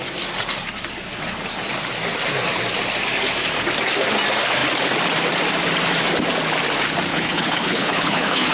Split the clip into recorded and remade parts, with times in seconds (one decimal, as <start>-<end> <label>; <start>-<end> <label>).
0.0-7.1 recorded; 7.1-8.5 remade